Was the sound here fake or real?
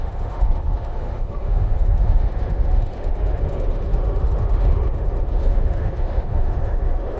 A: fake